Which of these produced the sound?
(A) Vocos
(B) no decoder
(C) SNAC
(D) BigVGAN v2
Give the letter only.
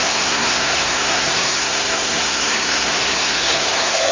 C